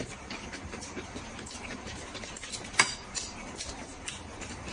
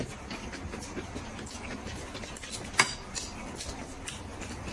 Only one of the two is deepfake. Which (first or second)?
first